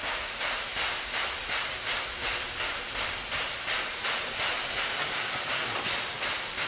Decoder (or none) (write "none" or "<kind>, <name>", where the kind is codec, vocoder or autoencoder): none